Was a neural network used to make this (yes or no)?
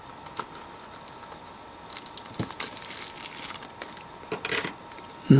no